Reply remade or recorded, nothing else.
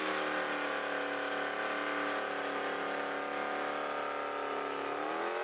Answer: recorded